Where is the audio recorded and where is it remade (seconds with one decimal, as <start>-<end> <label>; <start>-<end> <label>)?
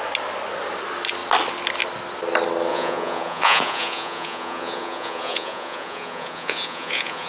0.0-2.7 recorded; 2.7-7.3 remade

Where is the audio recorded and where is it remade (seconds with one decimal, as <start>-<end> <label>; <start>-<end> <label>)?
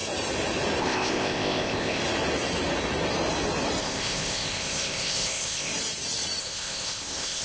0.0-0.8 recorded; 0.8-2.0 remade; 2.0-3.8 recorded; 3.8-5.7 remade; 5.7-6.4 recorded; 6.4-7.4 remade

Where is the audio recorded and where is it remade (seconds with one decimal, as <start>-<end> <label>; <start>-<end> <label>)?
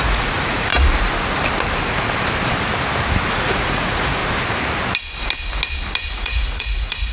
0.0-0.7 remade; 0.7-3.3 recorded; 3.3-4.2 remade; 4.2-6.1 recorded; 6.1-7.1 remade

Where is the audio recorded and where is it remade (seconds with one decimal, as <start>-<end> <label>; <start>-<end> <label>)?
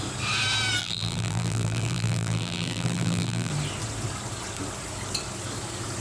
0.0-0.8 recorded; 0.8-3.5 remade; 3.5-6.0 recorded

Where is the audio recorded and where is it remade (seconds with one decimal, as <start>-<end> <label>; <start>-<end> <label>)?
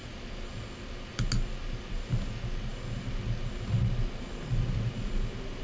0.0-5.6 recorded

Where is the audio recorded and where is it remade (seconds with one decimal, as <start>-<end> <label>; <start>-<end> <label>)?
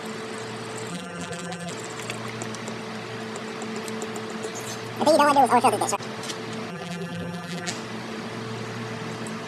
0.0-0.9 recorded; 0.9-1.7 remade; 1.7-6.7 recorded; 6.7-7.7 remade; 7.7-9.5 recorded